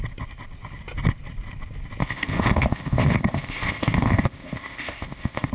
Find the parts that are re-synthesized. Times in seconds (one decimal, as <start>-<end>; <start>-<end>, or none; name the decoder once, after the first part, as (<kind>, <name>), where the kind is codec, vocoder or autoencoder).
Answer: 2.0-5.5 (codec, ZipCodec)